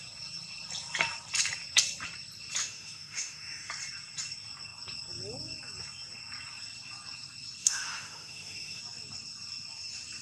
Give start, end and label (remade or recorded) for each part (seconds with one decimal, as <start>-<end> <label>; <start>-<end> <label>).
0.0-2.6 recorded; 2.6-3.7 remade; 3.7-7.6 recorded; 7.6-8.8 remade; 8.8-10.2 recorded